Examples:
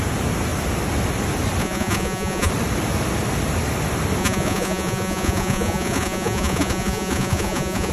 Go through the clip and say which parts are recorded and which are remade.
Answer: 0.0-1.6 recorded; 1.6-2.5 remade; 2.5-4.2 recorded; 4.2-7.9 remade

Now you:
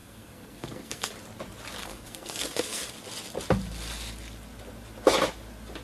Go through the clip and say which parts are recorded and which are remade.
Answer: 0.0-1.1 remade; 1.1-1.8 recorded; 1.8-2.9 remade; 2.9-5.8 recorded

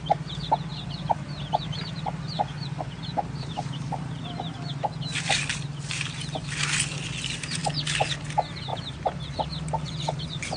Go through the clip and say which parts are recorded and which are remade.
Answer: 0.0-0.7 recorded; 0.7-4.2 remade; 4.2-8.7 recorded; 8.7-9.9 remade; 9.9-10.6 recorded

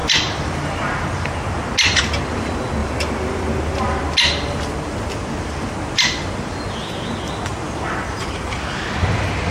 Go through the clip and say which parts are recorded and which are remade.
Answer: 0.0-1.3 remade; 1.3-2.8 recorded; 2.8-3.7 remade; 3.7-9.5 recorded